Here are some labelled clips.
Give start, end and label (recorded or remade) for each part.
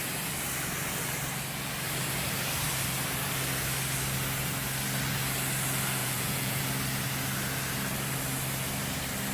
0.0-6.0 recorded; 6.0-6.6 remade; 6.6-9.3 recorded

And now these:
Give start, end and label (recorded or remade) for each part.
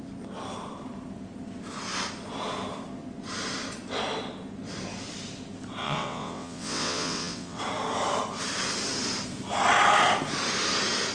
0.0-5.8 recorded; 5.8-7.6 remade; 7.6-11.1 recorded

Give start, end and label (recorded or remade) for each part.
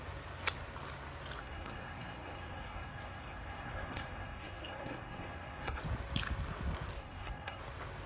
0.0-1.4 recorded; 1.4-5.8 remade; 5.8-7.0 recorded; 7.0-7.6 remade; 7.6-8.1 recorded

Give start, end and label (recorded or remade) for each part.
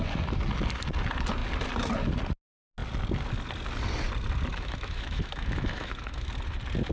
0.0-4.5 recorded; 4.5-6.3 remade; 6.3-6.9 recorded